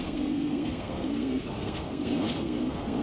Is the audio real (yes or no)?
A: no